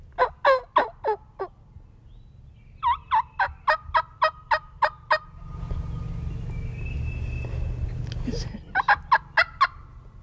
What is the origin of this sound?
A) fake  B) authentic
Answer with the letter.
B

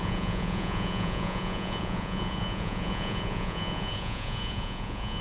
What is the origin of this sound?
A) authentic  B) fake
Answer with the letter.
B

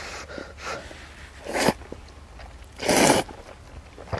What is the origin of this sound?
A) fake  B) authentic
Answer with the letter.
B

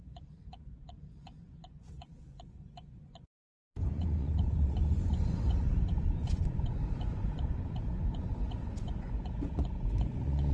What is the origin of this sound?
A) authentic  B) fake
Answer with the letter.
B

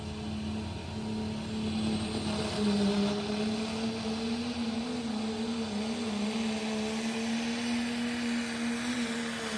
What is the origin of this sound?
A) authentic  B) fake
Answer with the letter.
A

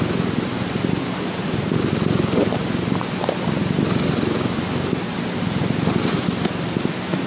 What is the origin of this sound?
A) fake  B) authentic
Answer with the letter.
B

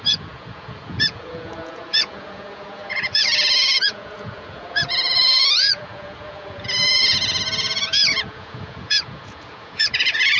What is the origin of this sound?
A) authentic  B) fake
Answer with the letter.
B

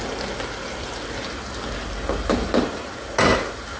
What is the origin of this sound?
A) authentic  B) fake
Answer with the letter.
A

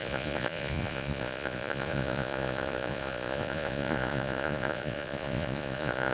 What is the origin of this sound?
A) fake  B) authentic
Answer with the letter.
A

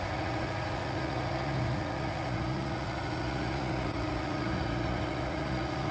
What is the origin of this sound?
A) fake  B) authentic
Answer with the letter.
A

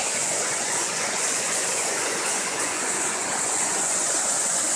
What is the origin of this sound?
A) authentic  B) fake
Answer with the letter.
B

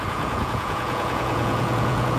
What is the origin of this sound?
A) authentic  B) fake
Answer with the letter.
B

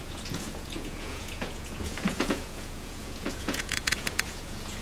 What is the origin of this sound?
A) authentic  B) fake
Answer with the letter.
B